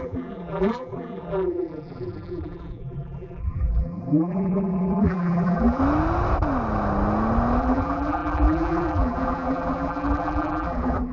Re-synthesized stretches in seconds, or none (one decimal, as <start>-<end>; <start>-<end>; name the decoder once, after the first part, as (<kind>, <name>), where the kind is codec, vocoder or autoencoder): 0.0-5.8 (vocoder, BigVGAN v2); 7.6-11.1